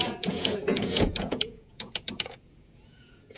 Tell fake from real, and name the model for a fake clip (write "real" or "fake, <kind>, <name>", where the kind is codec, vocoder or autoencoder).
fake, vocoder, Vocos